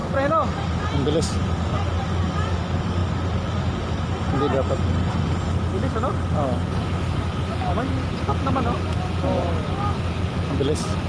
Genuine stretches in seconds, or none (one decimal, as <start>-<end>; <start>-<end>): 0.8-11.1